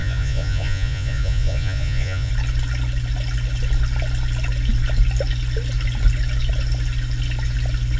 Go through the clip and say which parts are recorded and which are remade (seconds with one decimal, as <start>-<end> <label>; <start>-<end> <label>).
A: 0.0-2.3 remade; 2.3-8.0 recorded